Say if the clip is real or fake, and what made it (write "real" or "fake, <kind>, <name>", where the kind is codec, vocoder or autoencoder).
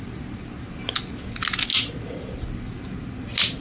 real